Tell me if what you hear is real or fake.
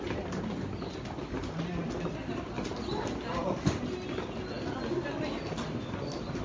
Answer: real